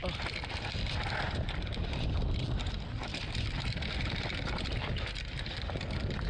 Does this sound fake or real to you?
real